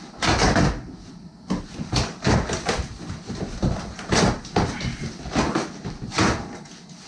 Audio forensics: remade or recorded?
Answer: recorded